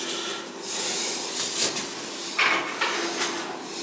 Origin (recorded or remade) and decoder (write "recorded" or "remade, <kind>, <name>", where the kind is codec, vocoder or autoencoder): recorded